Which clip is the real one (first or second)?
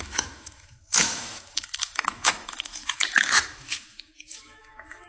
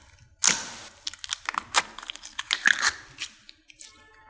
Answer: second